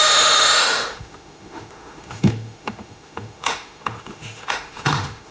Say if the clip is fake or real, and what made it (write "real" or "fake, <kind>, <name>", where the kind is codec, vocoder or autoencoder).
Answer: fake, autoencoder, DAC-VAE